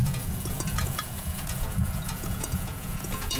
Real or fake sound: fake